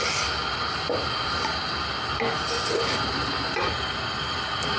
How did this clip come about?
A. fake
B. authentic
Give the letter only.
B